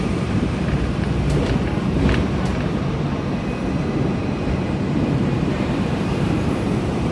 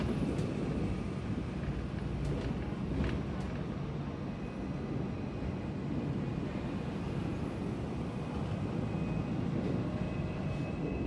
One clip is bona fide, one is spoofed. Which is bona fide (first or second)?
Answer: second